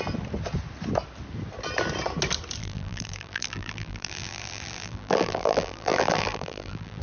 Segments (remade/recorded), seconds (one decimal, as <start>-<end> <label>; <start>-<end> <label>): 0.0-2.6 recorded; 2.6-7.0 remade